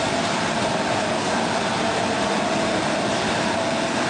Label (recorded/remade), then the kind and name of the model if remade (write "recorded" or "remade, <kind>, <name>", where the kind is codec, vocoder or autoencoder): recorded